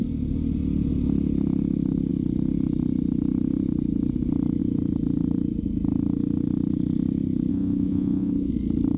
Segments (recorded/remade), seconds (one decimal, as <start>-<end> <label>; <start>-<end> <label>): 0.0-7.5 recorded; 7.5-8.5 remade; 8.5-9.0 recorded

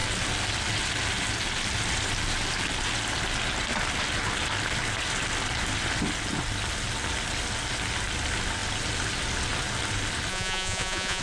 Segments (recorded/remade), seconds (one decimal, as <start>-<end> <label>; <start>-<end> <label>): 0.0-10.3 recorded; 10.3-11.2 remade

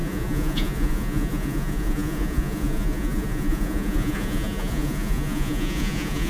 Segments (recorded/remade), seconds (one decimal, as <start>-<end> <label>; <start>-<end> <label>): 0.0-6.3 remade

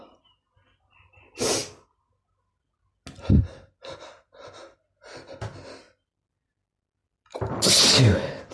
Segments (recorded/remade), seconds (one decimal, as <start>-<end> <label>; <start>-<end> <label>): 0.0-8.5 recorded

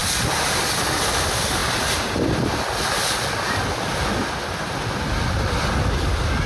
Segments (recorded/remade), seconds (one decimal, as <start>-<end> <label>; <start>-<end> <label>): 0.0-6.5 recorded

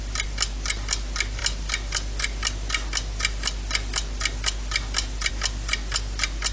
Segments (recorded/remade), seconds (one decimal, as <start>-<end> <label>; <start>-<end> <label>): 0.0-6.5 recorded

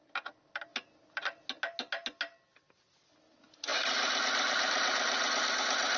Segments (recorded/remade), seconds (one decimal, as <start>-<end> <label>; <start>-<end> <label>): 0.0-6.0 recorded

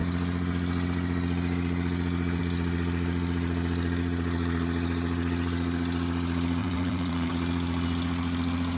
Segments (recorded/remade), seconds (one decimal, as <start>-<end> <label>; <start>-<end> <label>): 0.0-6.6 recorded; 6.6-7.3 remade; 7.3-8.8 recorded